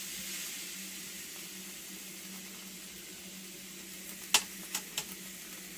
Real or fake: real